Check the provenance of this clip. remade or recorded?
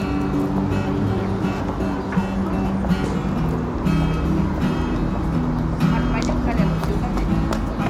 recorded